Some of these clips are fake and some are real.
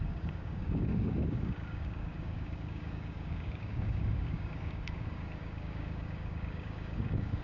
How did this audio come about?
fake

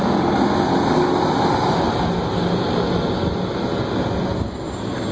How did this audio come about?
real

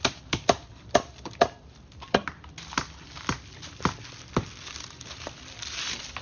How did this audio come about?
fake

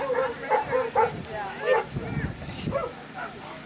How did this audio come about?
real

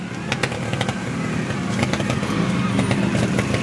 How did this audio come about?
real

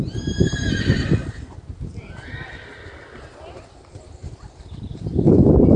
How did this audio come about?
real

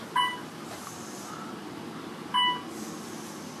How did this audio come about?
real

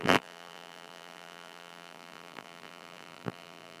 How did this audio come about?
fake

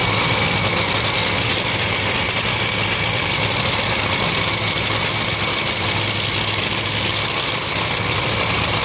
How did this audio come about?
real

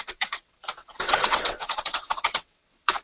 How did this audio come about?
fake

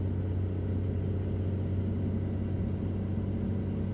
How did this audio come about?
real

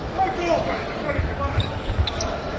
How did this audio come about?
fake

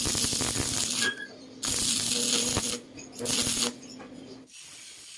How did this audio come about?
real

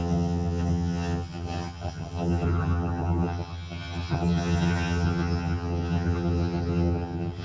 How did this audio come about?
fake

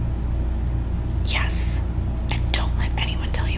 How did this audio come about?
real